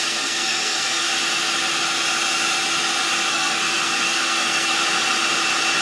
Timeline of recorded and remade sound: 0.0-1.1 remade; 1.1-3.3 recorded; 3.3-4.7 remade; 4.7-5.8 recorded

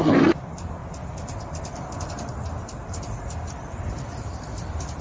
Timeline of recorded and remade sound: 0.0-5.0 recorded

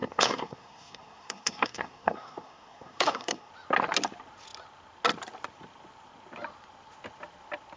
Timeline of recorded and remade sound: 0.0-3.5 remade; 3.5-7.8 recorded

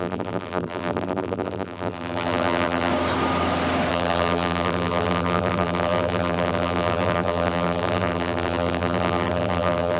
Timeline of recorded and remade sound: 0.0-2.9 remade; 2.9-3.9 recorded; 3.9-10.0 remade

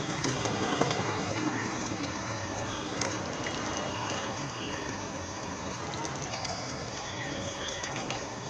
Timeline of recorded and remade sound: 0.0-3.2 remade; 3.2-3.9 recorded; 3.9-5.8 remade; 5.8-6.3 recorded; 6.3-8.5 remade

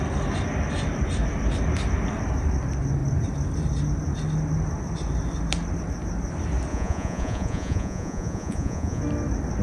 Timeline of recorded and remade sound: 0.0-6.7 recorded; 6.7-9.0 remade; 9.0-9.6 recorded

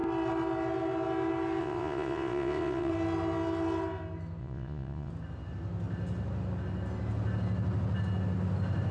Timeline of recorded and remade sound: 0.0-1.6 recorded; 1.6-2.9 remade; 2.9-4.4 recorded; 4.4-5.1 remade; 5.1-8.9 recorded